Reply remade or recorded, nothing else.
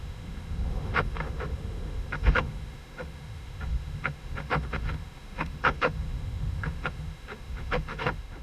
remade